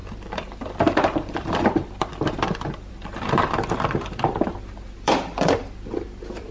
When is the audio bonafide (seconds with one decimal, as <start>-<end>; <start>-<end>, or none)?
none